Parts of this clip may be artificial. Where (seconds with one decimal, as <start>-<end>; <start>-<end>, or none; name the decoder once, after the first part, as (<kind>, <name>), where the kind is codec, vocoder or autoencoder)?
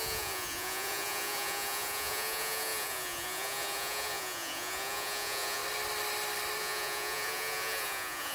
0.0-5.6 (vocoder, Vocos); 6.6-8.3